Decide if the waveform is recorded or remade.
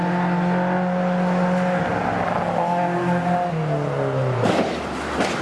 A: recorded